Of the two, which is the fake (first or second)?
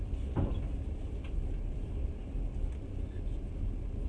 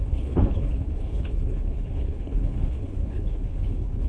second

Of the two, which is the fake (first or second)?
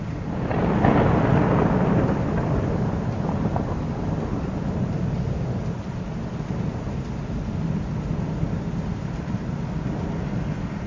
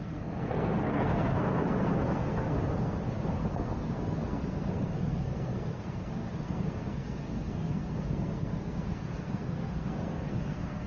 second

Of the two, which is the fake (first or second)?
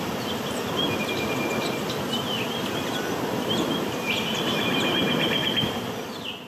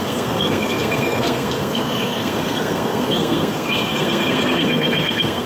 second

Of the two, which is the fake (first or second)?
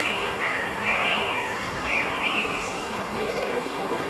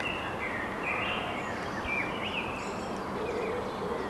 first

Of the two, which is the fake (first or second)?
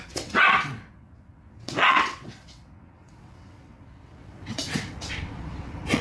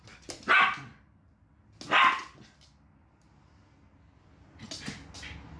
first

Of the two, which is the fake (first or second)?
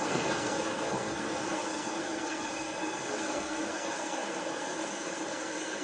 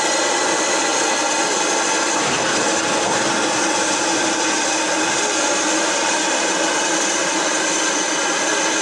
first